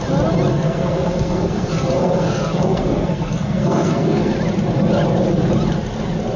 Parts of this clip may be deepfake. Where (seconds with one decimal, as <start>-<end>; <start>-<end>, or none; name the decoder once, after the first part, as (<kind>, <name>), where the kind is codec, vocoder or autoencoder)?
0.5-4.3 (codec, SNAC)